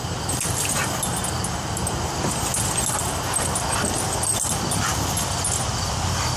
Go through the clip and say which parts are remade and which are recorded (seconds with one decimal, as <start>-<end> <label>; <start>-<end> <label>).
0.0-6.4 recorded